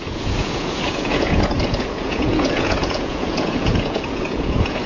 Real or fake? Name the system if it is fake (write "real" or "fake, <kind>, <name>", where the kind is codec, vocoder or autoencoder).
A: fake, vocoder, Vocos